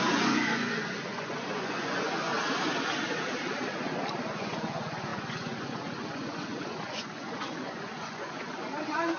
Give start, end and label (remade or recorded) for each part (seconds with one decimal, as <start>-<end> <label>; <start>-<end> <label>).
0.0-2.3 remade; 2.3-4.3 recorded; 4.3-9.2 remade